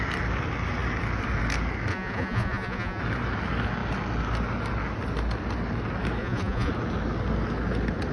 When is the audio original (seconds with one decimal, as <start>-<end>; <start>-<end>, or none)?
0.0-1.9; 3.0-6.2; 6.7-8.1